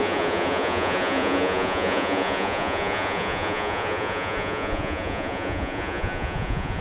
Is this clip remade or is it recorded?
remade